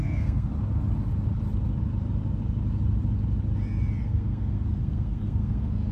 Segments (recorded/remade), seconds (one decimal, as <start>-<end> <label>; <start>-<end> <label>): 0.0-0.5 remade; 0.5-4.0 recorded; 4.0-5.9 remade